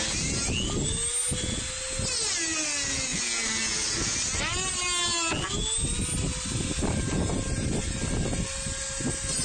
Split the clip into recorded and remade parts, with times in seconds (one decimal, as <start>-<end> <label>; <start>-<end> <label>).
0.0-9.4 recorded